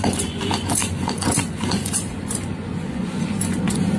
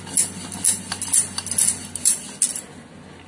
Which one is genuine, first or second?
second